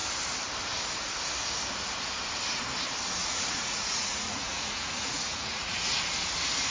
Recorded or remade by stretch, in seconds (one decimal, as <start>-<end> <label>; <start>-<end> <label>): 0.0-3.2 recorded; 3.2-6.0 remade; 6.0-6.7 recorded